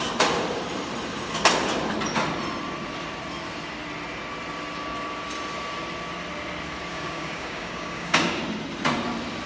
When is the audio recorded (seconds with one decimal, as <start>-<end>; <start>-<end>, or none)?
0.0-6.9; 8.4-9.5